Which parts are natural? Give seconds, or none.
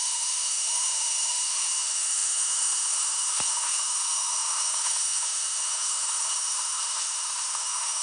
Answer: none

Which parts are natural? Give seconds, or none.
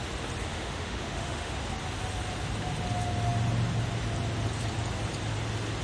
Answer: 0.0-0.5; 1.5-5.8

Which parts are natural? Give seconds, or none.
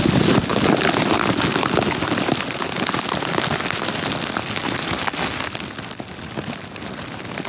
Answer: 0.0-7.5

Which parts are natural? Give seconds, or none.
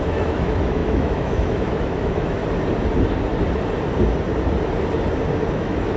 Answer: 2.4-5.5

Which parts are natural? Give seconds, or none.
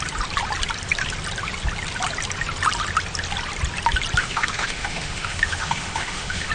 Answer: 0.0-4.2